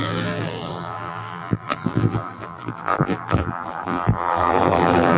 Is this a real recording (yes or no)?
no